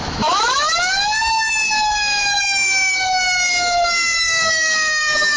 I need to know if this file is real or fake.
fake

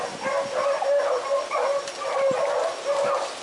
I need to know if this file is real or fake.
real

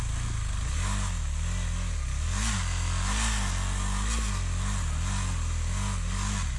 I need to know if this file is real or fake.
real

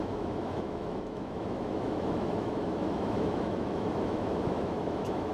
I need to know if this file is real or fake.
fake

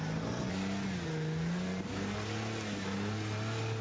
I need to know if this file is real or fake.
real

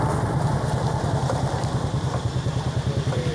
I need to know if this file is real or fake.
real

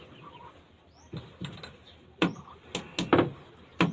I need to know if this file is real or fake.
real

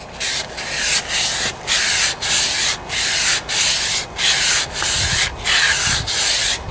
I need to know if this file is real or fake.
real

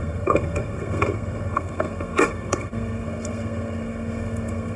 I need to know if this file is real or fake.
fake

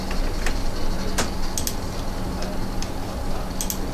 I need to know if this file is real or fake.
real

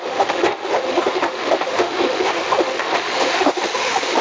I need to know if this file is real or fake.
fake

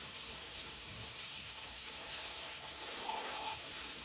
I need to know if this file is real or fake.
fake